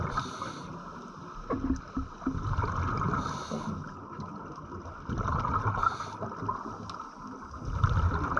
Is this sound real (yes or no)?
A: yes